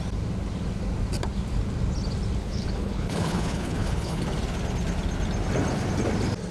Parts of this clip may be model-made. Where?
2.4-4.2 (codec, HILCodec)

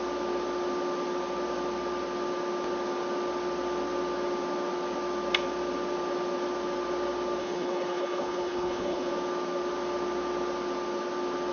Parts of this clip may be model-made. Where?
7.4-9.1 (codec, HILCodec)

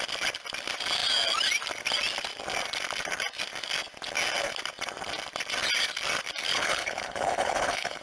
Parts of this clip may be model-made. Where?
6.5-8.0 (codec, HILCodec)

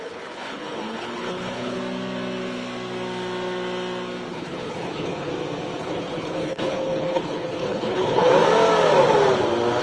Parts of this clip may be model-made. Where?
0.0-1.8 (codec, HILCodec); 4.3-5.3; 5.8-8.3

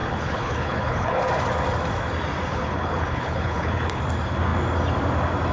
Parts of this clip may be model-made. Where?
0.0-1.2 (codec, HILCodec); 2.5-4.0

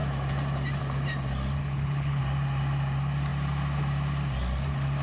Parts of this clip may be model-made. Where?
1.6-2.2 (codec, HILCodec)